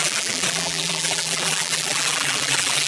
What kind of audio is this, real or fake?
fake